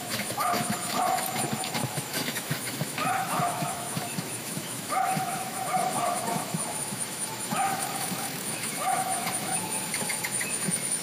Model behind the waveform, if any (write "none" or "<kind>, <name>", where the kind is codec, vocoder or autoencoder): autoencoder, DAC-VAE